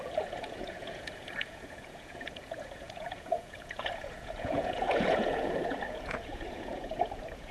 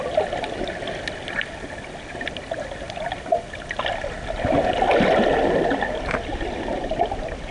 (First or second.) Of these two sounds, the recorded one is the second